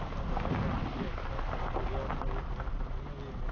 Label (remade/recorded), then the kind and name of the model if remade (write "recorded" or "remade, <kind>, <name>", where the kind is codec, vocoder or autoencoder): recorded